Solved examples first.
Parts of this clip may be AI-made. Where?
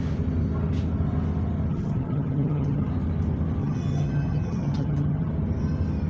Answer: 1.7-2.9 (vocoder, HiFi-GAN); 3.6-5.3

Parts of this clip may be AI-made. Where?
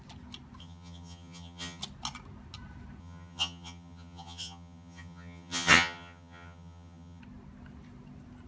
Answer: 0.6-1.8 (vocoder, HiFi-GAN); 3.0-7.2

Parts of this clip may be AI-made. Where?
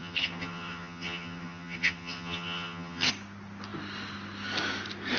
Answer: 0.0-3.1 (vocoder, HiFi-GAN)